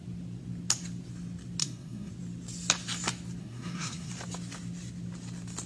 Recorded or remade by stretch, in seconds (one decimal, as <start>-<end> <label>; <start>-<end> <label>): 0.0-1.6 recorded; 1.6-2.1 remade; 2.1-3.4 recorded; 3.4-4.1 remade; 4.1-5.7 recorded